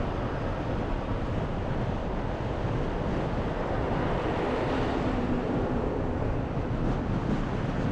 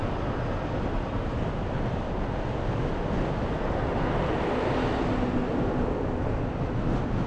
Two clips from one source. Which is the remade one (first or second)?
first